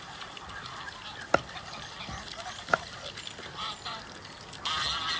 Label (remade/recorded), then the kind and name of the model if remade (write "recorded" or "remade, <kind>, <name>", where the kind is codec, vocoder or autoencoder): recorded